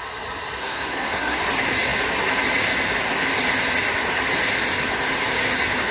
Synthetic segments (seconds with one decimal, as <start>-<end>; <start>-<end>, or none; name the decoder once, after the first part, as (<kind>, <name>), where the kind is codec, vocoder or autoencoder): 0.6-1.4 (codec, SNAC)